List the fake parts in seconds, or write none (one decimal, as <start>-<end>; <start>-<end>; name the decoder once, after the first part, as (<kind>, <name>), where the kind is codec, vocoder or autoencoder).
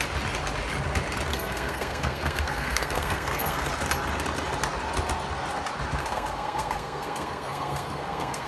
1.3-3.7 (codec, SNAC); 6.0-8.5